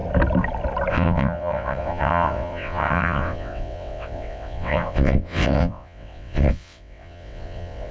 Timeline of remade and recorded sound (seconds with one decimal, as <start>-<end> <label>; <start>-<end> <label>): 0.0-0.9 recorded; 0.9-7.9 remade